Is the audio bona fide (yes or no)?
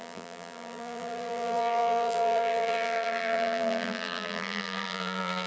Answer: no